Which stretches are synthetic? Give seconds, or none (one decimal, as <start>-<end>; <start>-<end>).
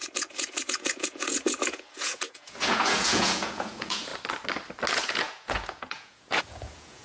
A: 0.0-4.1; 4.9-7.0